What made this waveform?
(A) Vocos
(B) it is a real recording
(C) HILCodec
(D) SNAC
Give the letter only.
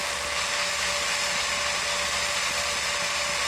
B